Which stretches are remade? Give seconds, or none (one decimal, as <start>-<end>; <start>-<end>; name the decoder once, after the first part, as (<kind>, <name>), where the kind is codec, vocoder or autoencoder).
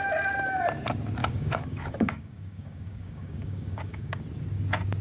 1.2-4.2 (codec, DAC)